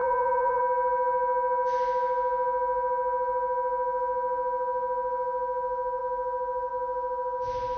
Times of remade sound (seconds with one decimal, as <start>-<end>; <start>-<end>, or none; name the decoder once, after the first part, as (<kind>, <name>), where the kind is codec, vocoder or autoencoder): 0.0-0.6 (vocoder, Vocos)